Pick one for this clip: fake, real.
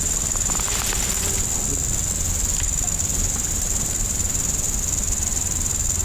real